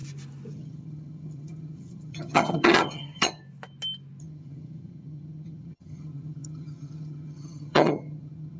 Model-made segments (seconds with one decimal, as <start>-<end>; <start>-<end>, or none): 0.5-3.4; 4.2-8.6